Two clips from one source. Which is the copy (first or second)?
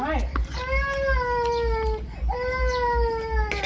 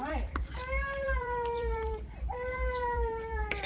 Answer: second